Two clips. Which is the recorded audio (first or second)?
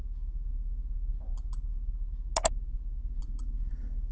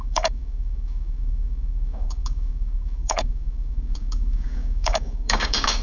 first